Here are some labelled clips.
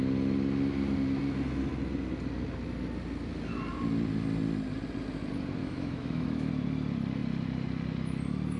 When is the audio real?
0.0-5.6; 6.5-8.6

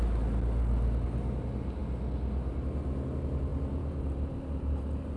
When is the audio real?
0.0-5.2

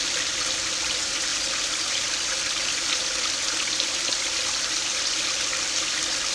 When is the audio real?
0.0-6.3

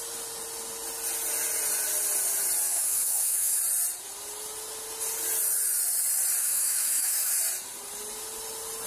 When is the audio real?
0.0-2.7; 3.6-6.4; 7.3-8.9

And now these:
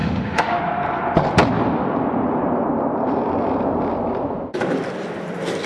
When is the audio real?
0.6-5.7

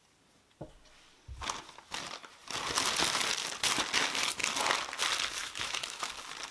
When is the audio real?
0.0-5.4; 6.1-6.5

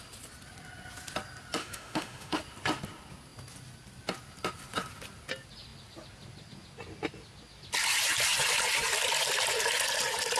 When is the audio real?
0.0-1.6; 2.4-10.4